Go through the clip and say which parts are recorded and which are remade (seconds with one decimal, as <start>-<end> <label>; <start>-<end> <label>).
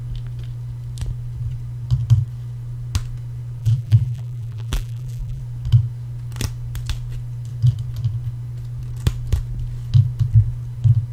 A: 0.0-3.6 recorded; 3.6-5.4 remade; 5.4-11.1 recorded